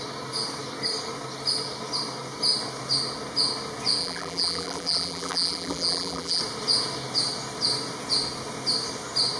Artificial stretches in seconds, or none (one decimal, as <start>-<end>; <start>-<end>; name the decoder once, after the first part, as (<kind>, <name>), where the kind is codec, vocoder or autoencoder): 4.0-6.4 (vocoder, BigVGAN v2)